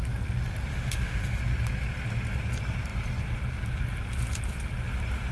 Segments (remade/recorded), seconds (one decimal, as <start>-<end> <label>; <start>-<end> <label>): 0.0-0.7 recorded; 0.7-1.4 remade; 1.4-5.3 recorded